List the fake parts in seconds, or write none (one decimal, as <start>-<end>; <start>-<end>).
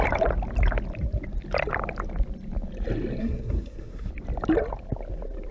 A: 3.2-4.1